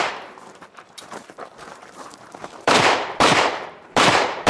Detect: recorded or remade remade